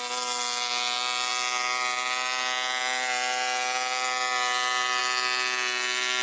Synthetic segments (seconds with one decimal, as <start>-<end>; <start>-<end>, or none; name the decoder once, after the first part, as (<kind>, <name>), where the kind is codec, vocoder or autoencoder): none